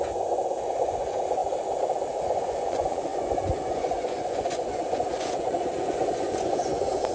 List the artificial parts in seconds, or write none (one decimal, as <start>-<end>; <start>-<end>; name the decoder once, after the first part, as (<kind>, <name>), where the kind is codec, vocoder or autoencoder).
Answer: 0.0-1.4 (vocoder, Vocos); 2.2-7.1